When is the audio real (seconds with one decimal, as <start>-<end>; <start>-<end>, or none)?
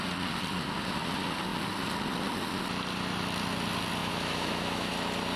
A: 0.0-4.0; 4.9-5.4